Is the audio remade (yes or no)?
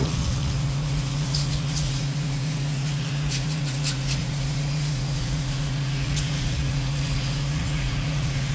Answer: yes